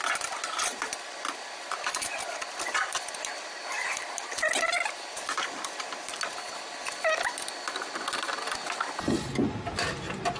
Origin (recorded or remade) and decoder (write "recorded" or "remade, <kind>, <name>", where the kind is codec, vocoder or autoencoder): recorded